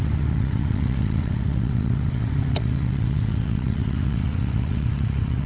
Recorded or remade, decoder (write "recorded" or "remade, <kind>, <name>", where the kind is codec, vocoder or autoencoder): remade, vocoder, WaveNeXt